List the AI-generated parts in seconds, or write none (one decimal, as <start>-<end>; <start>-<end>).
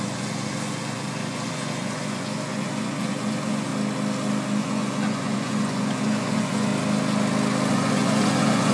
0.0-3.7; 4.6-6.7; 7.7-8.7